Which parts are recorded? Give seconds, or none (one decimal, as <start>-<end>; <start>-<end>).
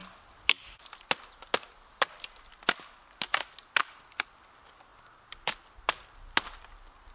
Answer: 0.0-7.1